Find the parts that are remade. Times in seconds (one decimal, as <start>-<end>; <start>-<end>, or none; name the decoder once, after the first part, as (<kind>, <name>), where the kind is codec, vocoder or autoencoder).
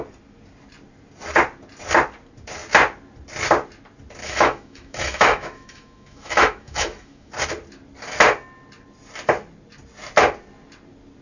4.2-7.3 (autoencoder, DAC-VAE)